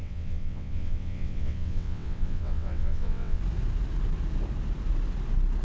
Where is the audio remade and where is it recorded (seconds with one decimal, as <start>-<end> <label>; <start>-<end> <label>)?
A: 0.0-3.4 remade; 3.4-5.6 recorded